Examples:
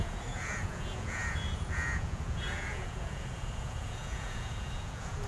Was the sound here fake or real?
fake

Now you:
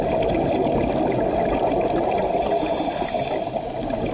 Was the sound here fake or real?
real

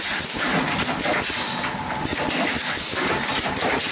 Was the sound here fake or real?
real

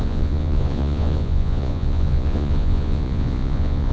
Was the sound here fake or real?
fake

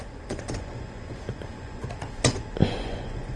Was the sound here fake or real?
fake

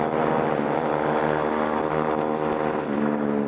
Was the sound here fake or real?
real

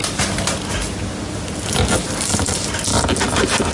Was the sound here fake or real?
real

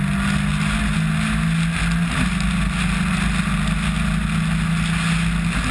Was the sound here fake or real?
real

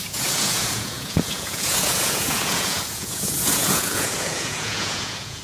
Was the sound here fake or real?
fake